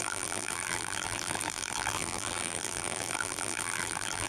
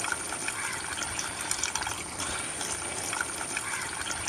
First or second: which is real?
second